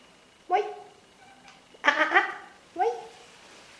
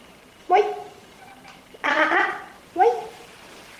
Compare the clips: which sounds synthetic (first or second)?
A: second